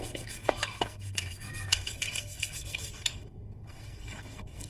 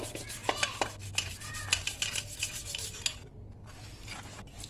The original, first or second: second